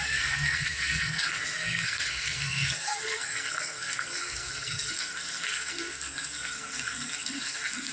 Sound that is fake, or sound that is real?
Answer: fake